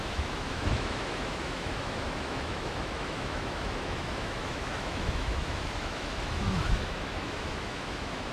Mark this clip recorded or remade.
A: remade